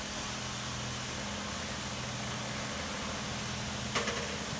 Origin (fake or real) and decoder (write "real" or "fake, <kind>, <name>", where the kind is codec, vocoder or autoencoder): real